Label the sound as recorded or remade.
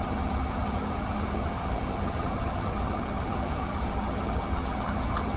remade